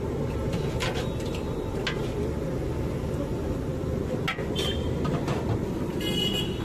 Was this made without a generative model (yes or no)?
yes